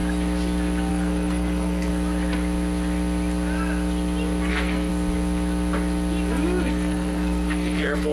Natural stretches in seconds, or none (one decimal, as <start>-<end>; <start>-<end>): 0.0-0.9; 1.9-4.5; 4.9-6.6